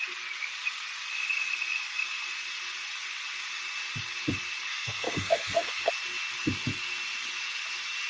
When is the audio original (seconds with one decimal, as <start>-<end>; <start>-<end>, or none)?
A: 0.0-4.7; 5.9-8.1